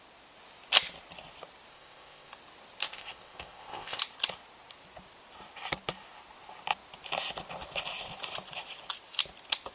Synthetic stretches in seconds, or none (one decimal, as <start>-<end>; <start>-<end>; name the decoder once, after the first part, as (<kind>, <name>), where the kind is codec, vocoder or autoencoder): 1.7-2.3 (codec, ZipCodec); 2.8-4.0